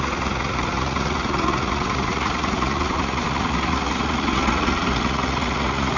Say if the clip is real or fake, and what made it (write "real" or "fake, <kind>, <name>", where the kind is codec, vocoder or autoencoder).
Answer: fake, vocoder, Vocos